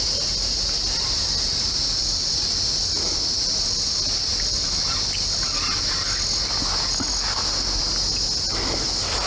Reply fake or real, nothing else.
real